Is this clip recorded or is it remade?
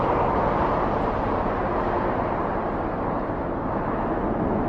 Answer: recorded